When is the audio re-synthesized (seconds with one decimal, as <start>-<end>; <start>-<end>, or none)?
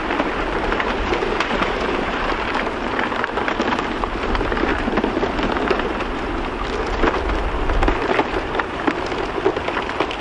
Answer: 0.0-3.4; 4.7-5.2; 8.2-8.9